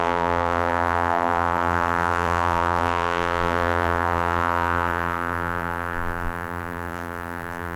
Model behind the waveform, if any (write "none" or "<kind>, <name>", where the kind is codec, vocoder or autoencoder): vocoder, BigVGAN v2